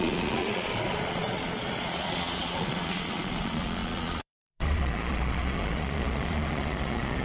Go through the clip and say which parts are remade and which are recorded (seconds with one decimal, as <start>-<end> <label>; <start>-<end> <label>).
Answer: 0.0-7.2 remade